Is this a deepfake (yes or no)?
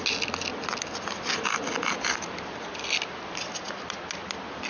no